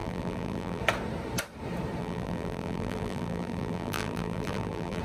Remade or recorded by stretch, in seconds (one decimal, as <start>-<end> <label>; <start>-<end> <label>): 0.0-0.8 remade; 0.8-2.0 recorded; 2.0-5.0 remade